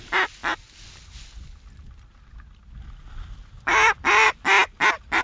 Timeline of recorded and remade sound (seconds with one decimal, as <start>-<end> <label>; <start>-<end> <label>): 0.0-5.2 recorded